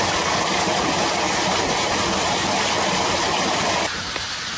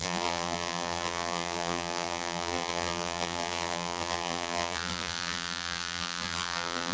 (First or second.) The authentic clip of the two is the first